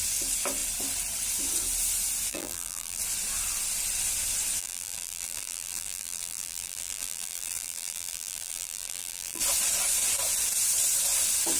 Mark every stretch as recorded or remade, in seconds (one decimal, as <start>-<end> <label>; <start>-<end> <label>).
0.0-2.3 recorded; 2.3-3.0 remade; 3.0-4.6 recorded; 4.6-9.4 remade; 9.4-11.6 recorded